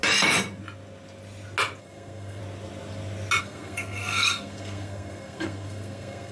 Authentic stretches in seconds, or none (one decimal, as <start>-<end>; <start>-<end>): 0.0-1.8; 2.4-3.4